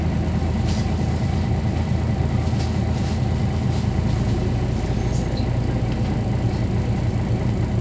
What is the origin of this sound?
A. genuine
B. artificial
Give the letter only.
A